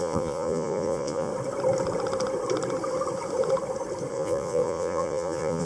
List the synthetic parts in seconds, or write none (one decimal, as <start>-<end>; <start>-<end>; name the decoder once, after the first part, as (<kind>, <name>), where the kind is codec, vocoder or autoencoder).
0.0-1.3 (vocoder, Vocos); 4.1-5.6